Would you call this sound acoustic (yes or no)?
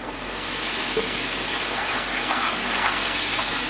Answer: no